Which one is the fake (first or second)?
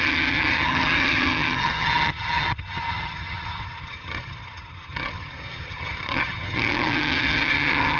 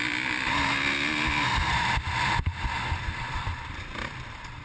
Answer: first